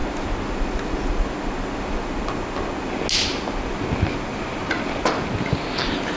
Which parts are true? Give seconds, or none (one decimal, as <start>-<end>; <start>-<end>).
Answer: 0.0-6.2